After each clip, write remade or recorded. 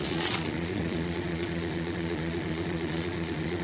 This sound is remade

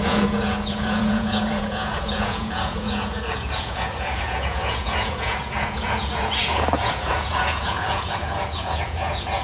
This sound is remade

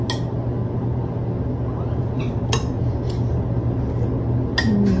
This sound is recorded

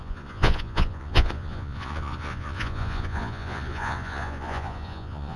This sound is remade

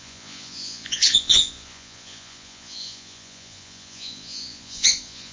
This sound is remade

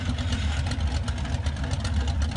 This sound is recorded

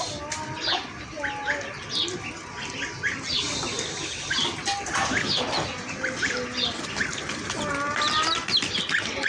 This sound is recorded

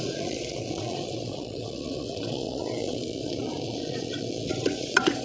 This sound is remade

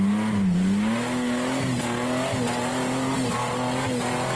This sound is recorded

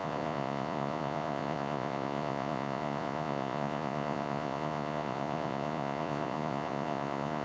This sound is remade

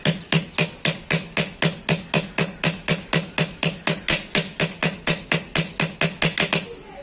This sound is recorded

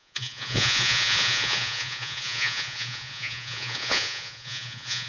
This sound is remade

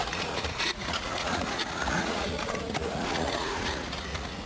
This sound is remade